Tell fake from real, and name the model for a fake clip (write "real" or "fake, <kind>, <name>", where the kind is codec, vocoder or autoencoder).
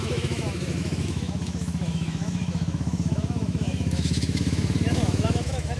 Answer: fake, autoencoder, DAC-VAE